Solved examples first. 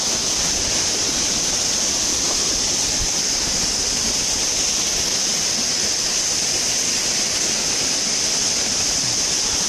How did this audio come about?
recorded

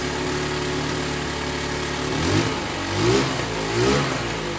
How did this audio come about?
recorded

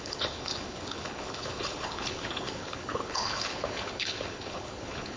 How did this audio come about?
remade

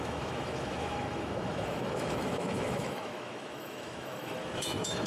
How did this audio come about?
remade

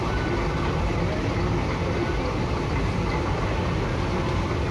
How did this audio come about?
recorded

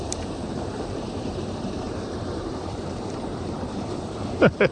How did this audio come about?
remade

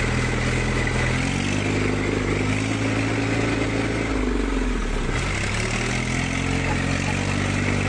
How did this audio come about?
recorded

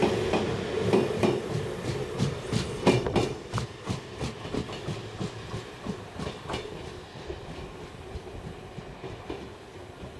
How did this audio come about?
recorded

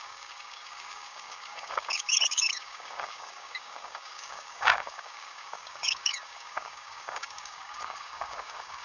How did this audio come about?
remade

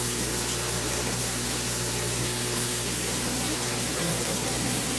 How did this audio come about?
remade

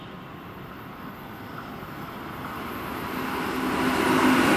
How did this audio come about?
recorded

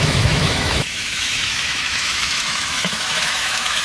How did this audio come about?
remade